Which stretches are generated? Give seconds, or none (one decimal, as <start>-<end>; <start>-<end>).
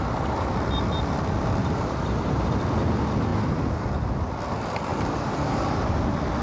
1.6-2.4; 3.3-3.9; 4.9-6.0